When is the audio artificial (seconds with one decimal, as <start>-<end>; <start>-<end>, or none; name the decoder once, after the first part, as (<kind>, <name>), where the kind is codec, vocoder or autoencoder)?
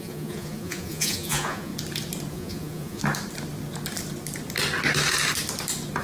0.0-1.7 (vocoder, Vocos); 2.3-3.0